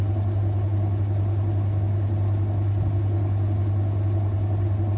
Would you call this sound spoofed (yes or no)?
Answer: no